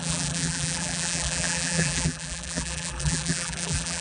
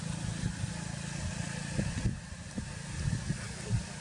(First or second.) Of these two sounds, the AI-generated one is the first